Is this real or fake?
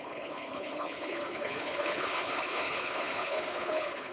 fake